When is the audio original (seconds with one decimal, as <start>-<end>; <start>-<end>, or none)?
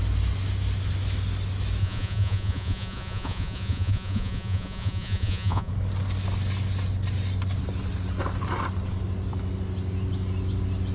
0.0-1.8; 5.7-10.9